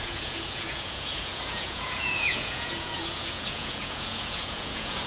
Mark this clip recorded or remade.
remade